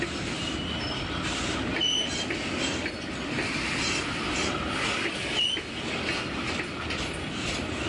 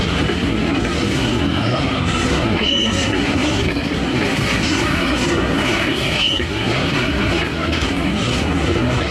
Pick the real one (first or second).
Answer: first